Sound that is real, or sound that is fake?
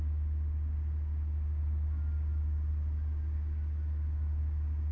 real